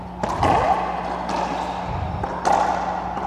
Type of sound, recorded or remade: recorded